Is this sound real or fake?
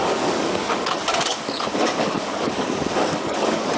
fake